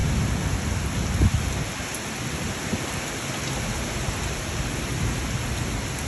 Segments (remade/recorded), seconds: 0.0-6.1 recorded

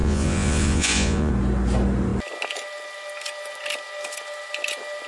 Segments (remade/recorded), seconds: 0.0-1.3 remade; 1.3-5.1 recorded

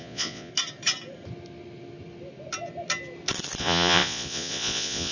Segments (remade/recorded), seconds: 0.0-0.5 remade; 0.5-3.6 recorded; 3.6-5.1 remade

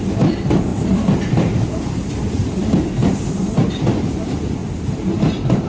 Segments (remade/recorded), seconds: 0.0-5.7 recorded

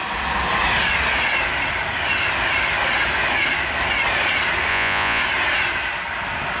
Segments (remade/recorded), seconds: 0.0-4.7 recorded; 4.7-5.2 remade; 5.2-6.6 recorded

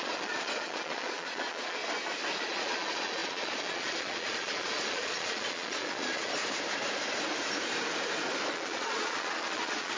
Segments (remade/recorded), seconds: 0.0-1.8 remade; 1.8-2.4 recorded; 2.4-6.3 remade; 6.3-8.5 recorded; 8.5-10.0 remade

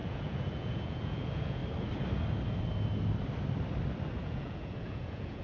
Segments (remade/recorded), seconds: 0.0-1.6 remade; 1.6-4.2 recorded; 4.2-5.4 remade

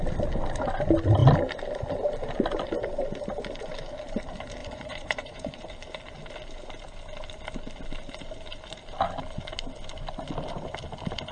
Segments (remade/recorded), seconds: 0.0-4.6 recorded; 4.6-5.6 remade; 5.6-11.3 recorded